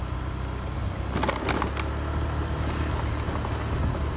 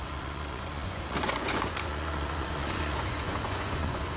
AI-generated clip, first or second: second